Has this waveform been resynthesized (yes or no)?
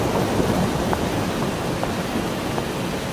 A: no